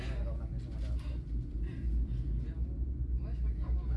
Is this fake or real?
real